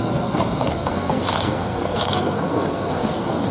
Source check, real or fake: fake